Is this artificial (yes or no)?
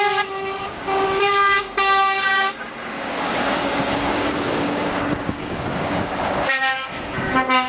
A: yes